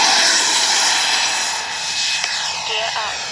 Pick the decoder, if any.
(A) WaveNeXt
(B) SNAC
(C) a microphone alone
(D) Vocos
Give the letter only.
C